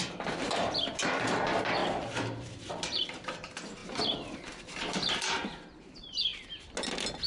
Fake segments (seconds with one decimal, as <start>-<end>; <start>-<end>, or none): 0.4-1.4; 1.8-3.3